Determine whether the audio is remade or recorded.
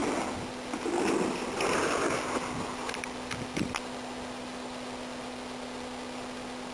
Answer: recorded